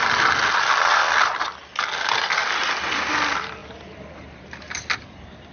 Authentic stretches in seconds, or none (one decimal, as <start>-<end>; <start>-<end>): 0.0-5.5